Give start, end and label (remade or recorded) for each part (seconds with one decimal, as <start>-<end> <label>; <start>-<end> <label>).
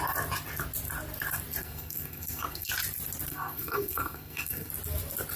0.0-1.6 recorded; 1.6-2.7 remade; 2.7-3.3 recorded; 3.3-4.7 remade; 4.7-5.4 recorded